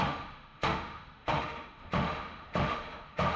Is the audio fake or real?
fake